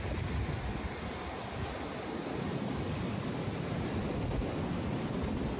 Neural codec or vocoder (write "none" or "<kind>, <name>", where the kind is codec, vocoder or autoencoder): none